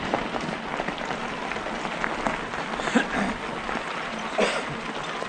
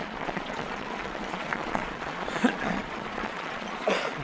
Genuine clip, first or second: first